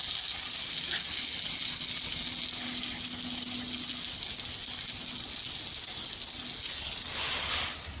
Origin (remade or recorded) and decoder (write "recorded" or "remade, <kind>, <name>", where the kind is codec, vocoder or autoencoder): recorded